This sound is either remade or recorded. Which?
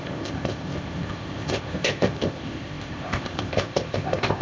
remade